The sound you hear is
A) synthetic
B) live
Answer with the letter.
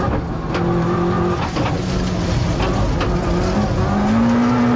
B